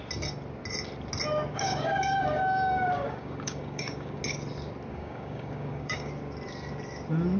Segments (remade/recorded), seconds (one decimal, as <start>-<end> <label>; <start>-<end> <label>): 0.0-1.5 recorded; 1.5-4.2 remade; 4.2-4.9 recorded; 4.9-6.1 remade; 6.1-7.4 recorded